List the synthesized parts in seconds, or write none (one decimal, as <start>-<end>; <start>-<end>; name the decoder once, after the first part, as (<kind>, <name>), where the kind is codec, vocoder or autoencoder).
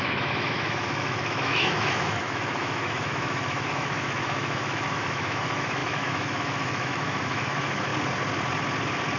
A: 0.0-7.9 (autoencoder, DAC-VAE)